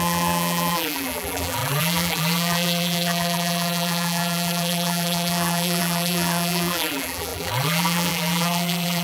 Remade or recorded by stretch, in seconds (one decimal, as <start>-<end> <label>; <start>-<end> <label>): 0.0-9.0 remade